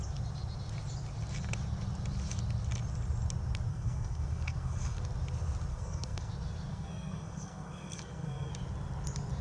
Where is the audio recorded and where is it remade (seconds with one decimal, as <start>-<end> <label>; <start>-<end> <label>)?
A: 0.0-3.7 recorded; 3.7-5.0 remade; 5.0-5.7 recorded; 5.7-6.3 remade; 6.3-6.7 recorded; 6.7-8.5 remade; 8.5-9.4 recorded